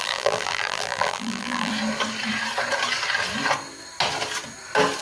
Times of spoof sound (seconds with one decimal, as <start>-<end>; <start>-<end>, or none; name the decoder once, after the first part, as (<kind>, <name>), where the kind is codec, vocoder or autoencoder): 0.0-1.7 (vocoder, BigVGAN v2)